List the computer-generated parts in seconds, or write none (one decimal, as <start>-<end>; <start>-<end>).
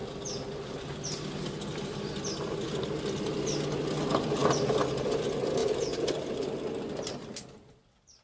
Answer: none